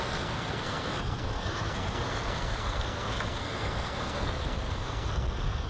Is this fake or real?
fake